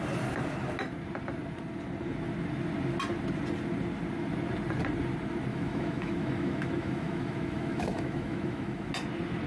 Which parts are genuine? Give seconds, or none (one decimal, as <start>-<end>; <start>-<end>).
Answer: 0.0-5.5; 8.9-9.5

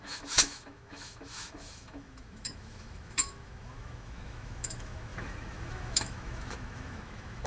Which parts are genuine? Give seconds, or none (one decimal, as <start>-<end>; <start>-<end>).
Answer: none

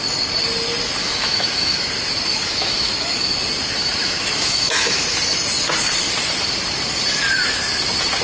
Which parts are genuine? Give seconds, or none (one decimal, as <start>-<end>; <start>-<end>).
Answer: 0.0-1.0; 1.9-2.3; 3.4-4.0; 5.0-8.2